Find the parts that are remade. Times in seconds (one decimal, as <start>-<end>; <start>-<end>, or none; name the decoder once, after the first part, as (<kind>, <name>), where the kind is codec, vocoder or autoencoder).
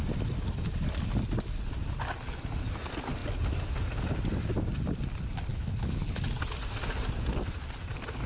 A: 5.5-6.2 (codec, HILCodec)